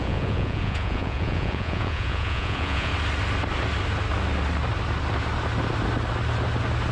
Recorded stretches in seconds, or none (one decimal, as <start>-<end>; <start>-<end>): 2.9-6.9